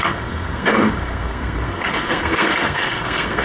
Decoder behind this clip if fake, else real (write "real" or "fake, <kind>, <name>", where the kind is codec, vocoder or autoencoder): fake, codec, SNAC